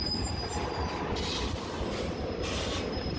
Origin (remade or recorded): recorded